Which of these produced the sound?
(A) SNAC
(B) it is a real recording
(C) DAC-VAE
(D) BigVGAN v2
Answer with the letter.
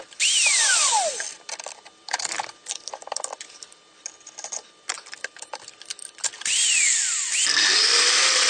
D